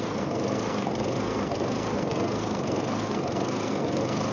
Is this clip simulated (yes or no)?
yes